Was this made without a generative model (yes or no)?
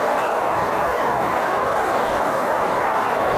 no